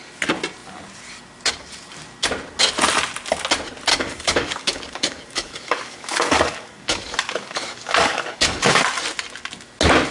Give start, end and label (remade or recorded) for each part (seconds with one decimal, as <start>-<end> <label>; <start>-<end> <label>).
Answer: 0.0-3.9 recorded; 3.9-8.8 remade; 8.8-10.1 recorded